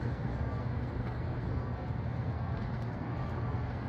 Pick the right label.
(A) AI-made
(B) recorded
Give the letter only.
A